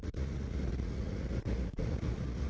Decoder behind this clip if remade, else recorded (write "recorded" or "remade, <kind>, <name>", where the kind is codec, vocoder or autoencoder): remade, vocoder, Vocos